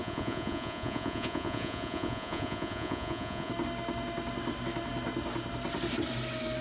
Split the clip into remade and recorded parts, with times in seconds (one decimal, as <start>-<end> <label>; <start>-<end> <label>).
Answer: 0.0-3.5 remade; 3.5-6.6 recorded